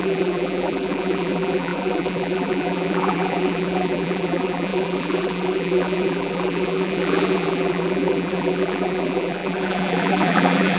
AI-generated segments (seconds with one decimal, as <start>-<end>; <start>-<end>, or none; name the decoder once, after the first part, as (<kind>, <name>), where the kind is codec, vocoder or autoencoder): 0.0-10.8 (vocoder, BigVGAN v2)